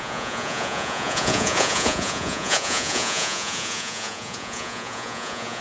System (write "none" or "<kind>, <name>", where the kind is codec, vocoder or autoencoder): vocoder, Vocos